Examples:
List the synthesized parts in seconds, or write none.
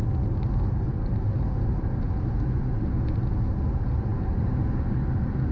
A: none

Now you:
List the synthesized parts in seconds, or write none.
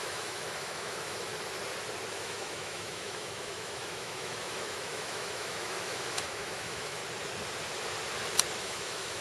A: 0.0-1.3 (autoencoder, DAC-VAE); 2.1-7.0; 8.6-9.2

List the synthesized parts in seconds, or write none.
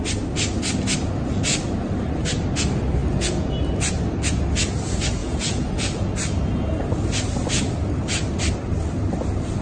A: 3.0-3.5 (vocoder, Vocos); 5.2-6.1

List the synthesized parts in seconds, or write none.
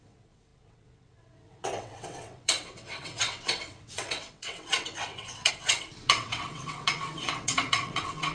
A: 0.0-8.3 (vocoder, WaveNeXt)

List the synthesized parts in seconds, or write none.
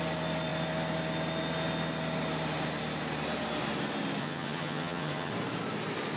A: 4.2-5.3 (vocoder, HiFi-GAN)